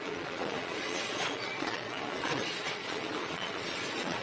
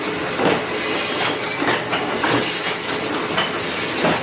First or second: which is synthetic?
first